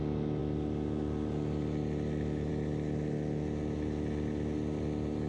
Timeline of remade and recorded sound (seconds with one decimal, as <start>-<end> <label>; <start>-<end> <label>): 0.0-5.3 recorded